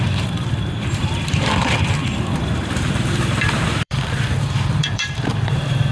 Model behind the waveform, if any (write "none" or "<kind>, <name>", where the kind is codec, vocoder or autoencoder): vocoder, BigVGAN v2